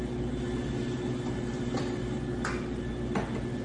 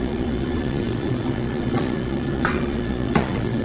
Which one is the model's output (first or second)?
second